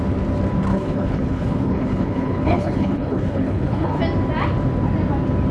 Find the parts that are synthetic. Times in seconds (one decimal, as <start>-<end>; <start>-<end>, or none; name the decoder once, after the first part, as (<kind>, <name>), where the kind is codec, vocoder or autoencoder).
0.7-4.0 (codec, HILCodec)

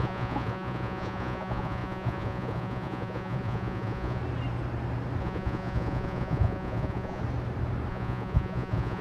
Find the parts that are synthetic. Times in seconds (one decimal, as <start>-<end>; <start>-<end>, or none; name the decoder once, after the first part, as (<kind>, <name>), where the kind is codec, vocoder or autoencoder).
0.0-4.2 (vocoder, Vocos); 5.2-7.2; 7.9-9.0

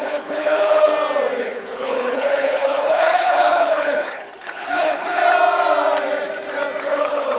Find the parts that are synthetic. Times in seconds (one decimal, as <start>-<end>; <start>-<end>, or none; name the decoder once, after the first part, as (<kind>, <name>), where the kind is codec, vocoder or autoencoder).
0.0-0.9 (codec, HILCodec); 1.4-5.2; 6.8-7.4

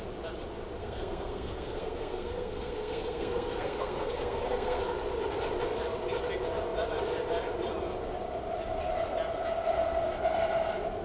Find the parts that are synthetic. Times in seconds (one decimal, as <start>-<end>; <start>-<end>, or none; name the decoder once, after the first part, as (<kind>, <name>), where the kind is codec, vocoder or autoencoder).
0.8-4.8 (codec, SNAC)

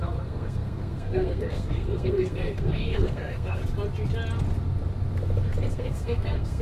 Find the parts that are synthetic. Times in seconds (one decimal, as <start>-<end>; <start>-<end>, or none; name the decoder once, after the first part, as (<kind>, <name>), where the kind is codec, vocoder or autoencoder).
0.0-3.6 (codec, SNAC); 5.7-6.6